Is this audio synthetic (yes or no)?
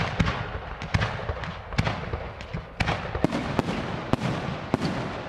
no